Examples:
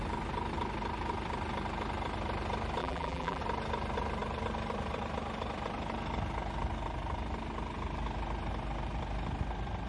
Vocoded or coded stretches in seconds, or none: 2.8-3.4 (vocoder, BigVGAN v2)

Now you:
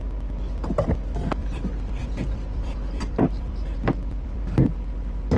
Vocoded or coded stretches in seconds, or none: 1.4-4.4 (vocoder, BigVGAN v2)

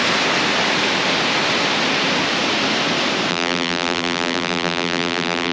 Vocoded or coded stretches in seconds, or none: 3.3-5.5 (vocoder, BigVGAN v2)